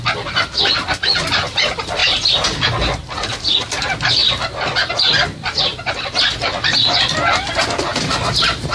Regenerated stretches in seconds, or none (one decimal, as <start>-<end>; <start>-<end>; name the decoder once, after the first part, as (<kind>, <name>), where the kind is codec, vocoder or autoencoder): none